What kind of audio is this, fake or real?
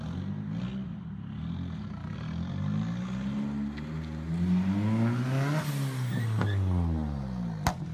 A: real